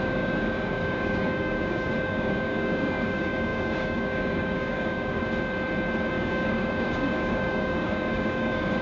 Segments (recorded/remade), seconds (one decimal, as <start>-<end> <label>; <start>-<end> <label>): 0.0-5.2 remade; 5.2-6.1 recorded; 6.1-8.8 remade